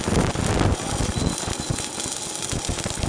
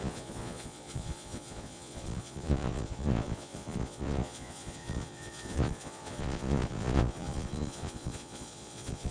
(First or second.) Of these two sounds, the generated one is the second